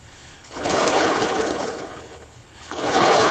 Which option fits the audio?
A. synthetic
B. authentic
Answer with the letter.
A